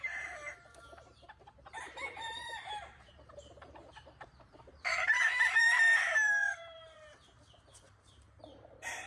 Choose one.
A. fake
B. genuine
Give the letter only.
A